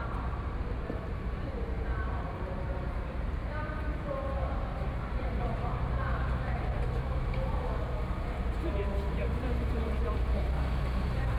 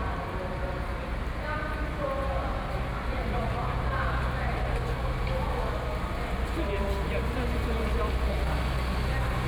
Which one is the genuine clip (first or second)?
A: second